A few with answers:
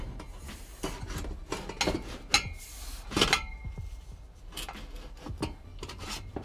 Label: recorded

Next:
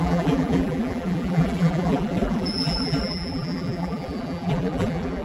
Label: remade